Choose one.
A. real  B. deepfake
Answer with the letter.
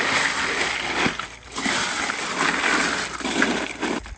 A